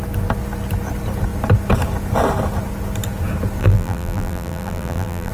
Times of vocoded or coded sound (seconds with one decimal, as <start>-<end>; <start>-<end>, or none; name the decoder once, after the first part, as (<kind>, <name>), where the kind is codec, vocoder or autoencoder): 3.6-5.3 (vocoder, BigVGAN v2)